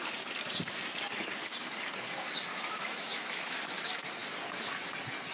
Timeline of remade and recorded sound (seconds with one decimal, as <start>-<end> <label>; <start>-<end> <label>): 0.0-2.5 recorded; 2.5-3.6 remade; 3.6-5.3 recorded